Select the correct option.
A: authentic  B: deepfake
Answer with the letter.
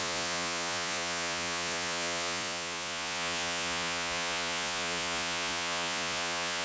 B